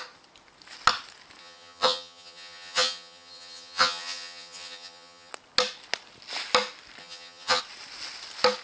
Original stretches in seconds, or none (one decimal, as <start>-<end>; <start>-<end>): 0.0-1.4; 5.3-7.0; 7.6-8.6